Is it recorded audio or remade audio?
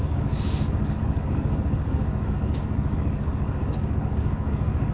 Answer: remade